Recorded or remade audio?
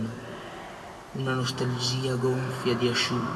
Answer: recorded